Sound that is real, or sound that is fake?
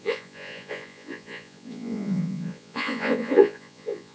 fake